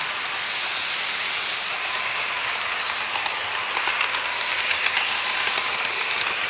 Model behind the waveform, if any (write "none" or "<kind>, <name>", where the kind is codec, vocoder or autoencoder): none